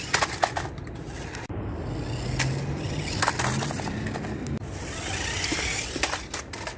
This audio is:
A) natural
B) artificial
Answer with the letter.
A